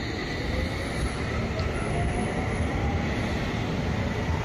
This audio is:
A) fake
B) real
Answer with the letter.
B